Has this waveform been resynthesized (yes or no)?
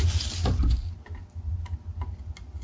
no